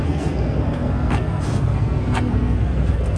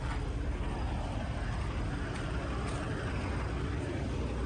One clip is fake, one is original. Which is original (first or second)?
second